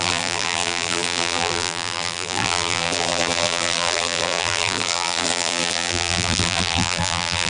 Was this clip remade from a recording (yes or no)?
yes